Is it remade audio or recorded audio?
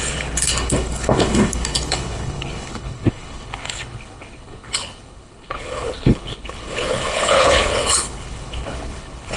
remade